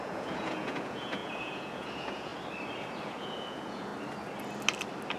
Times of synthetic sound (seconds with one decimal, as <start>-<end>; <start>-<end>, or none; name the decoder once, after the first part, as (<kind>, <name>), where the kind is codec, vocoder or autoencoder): 0.0-2.3 (vocoder, Vocos); 3.1-3.9